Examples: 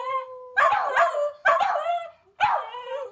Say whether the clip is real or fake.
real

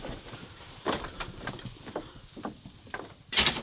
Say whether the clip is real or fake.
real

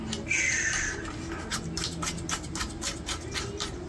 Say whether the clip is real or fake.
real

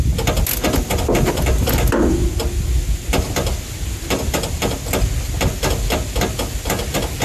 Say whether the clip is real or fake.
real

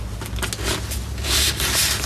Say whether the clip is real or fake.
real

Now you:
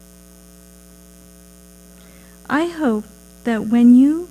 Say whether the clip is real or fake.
real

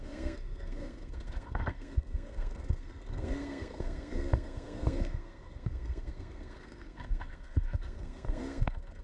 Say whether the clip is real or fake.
fake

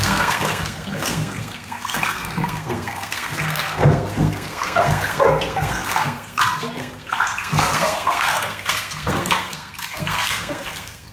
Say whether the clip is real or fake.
fake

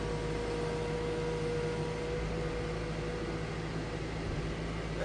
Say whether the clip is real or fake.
real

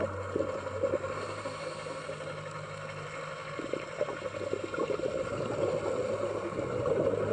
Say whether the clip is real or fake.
real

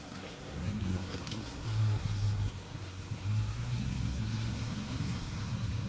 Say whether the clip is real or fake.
fake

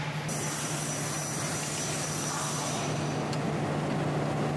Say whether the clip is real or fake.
real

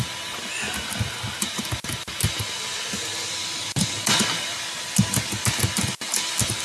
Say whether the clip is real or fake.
real